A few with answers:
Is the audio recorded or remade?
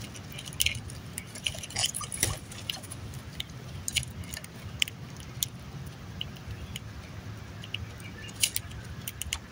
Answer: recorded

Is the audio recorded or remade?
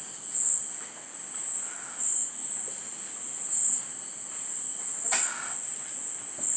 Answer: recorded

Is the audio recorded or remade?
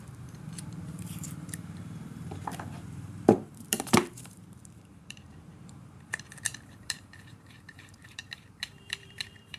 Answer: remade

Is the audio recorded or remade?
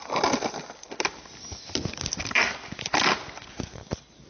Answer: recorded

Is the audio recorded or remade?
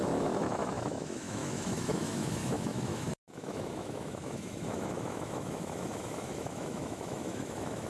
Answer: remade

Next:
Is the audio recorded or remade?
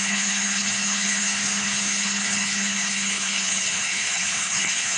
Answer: remade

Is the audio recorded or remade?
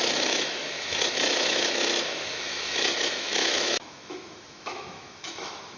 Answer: remade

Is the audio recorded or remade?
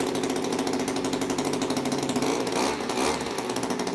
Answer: recorded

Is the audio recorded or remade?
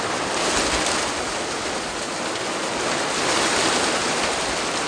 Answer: recorded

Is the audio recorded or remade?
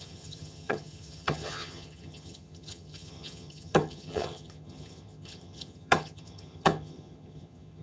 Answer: remade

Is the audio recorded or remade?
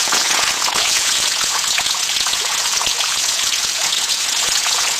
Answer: remade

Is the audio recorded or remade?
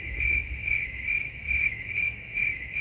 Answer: remade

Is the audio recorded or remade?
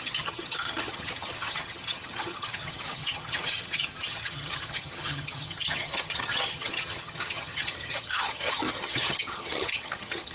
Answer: remade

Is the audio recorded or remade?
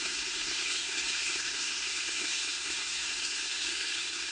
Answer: remade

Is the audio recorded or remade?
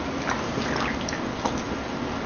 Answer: recorded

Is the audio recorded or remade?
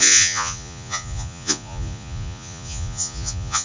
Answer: remade